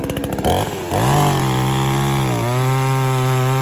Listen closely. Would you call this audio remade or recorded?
recorded